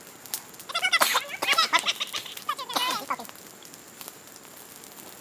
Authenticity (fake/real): real